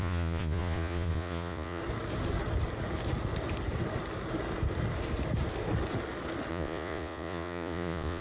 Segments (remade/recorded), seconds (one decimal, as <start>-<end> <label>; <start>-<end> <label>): 0.0-1.8 remade; 1.8-6.5 recorded; 6.5-8.2 remade

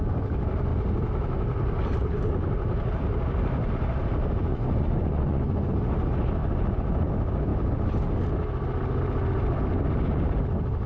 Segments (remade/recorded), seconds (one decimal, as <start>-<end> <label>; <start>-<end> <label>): 0.0-4.5 recorded; 4.5-5.7 remade; 5.7-6.4 recorded; 6.4-7.1 remade; 7.1-10.9 recorded

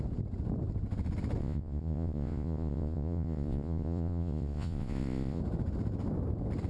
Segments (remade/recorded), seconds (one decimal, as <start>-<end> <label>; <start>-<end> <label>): 0.0-1.4 recorded; 1.4-5.4 remade; 5.4-6.7 recorded

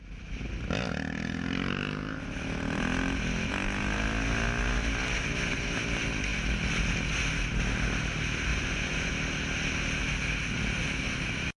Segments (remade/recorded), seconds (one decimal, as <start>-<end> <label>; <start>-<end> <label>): 0.0-8.5 recorded; 8.5-9.1 remade; 9.1-11.6 recorded

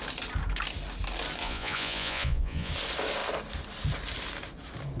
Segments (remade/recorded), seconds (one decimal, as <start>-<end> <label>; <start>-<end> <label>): 0.0-1.4 recorded; 1.4-2.7 remade; 2.7-5.0 recorded

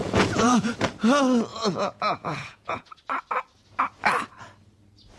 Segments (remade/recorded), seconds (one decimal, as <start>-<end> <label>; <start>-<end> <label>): 0.0-0.7 remade; 0.7-1.5 recorded; 1.5-3.0 remade; 3.0-5.2 recorded

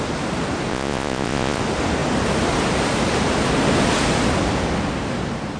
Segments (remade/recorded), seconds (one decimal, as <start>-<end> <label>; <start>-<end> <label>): 0.0-0.7 recorded; 0.7-1.6 remade; 1.6-5.6 recorded

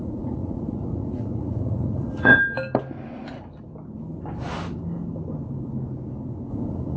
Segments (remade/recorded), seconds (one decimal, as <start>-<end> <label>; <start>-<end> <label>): 0.0-2.3 remade; 2.3-6.5 recorded; 6.5-7.0 remade